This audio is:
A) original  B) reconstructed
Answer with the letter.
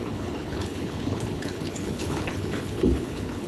B